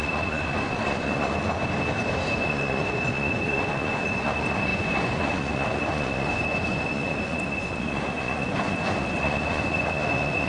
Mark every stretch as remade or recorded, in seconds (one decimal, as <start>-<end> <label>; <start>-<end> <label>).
0.0-1.6 remade; 1.6-2.3 recorded; 2.3-10.5 remade